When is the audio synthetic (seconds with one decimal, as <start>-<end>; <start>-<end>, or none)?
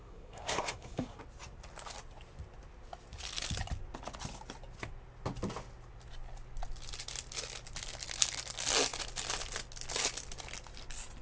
0.0-1.2